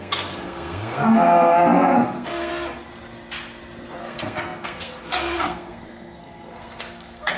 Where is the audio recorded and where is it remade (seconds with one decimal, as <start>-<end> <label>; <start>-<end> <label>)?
0.0-2.5 remade; 2.5-4.0 recorded; 4.0-7.4 remade

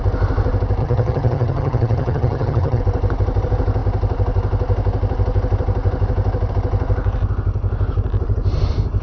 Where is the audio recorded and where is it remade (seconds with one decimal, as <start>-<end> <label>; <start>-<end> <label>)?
0.0-0.8 recorded; 0.8-2.8 remade; 2.8-9.0 recorded

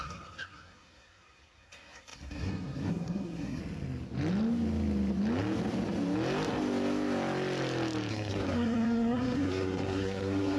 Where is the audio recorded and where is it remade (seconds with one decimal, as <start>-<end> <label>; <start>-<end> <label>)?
0.0-3.6 remade; 3.6-8.1 recorded; 8.1-10.6 remade

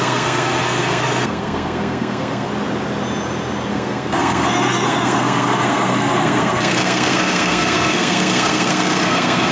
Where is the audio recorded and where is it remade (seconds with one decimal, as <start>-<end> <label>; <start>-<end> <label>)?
0.0-2.5 remade; 2.5-3.7 recorded; 3.7-9.5 remade

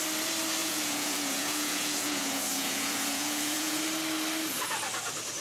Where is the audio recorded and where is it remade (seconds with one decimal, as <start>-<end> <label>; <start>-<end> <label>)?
0.0-0.6 recorded; 0.6-3.8 remade; 3.8-5.4 recorded